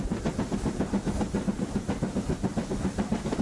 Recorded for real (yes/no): yes